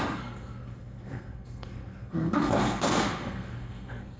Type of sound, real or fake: fake